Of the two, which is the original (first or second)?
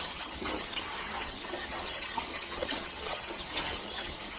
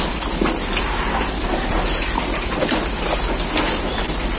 second